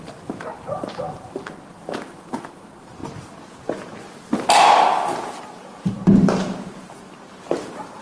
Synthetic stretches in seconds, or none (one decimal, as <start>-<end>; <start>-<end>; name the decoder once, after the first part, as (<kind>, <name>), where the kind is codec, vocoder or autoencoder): 0.0-3.0 (vocoder, BigVGAN v2); 5.4-8.0